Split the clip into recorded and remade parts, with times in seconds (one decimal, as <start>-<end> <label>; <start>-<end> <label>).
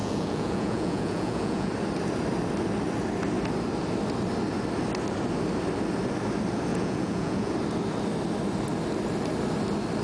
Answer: 0.0-1.7 remade; 1.7-6.7 recorded; 6.7-7.5 remade; 7.5-10.0 recorded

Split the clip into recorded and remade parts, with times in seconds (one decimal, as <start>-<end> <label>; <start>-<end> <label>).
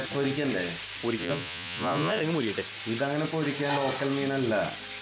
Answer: 0.0-1.2 recorded; 1.2-2.2 remade; 2.2-5.0 recorded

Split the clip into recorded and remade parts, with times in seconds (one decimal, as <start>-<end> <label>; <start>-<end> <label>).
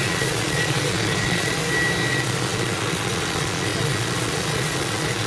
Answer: 0.0-1.6 remade; 1.6-2.1 recorded; 2.1-5.3 remade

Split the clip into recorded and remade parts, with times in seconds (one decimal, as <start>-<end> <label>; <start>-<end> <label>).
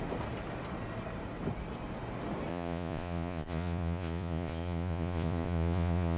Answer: 0.0-2.5 recorded; 2.5-6.2 remade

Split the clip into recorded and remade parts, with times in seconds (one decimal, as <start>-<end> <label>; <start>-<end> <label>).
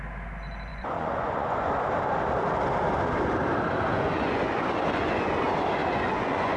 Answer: 0.0-0.7 recorded; 0.7-1.7 remade; 1.7-3.9 recorded; 3.9-5.3 remade; 5.3-5.8 recorded; 5.8-6.6 remade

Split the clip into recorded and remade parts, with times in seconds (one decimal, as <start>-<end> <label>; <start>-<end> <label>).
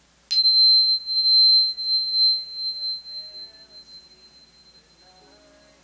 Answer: 0.0-5.8 recorded